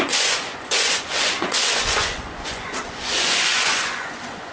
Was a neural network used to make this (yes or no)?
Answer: yes